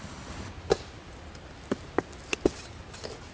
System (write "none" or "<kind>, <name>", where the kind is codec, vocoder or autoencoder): none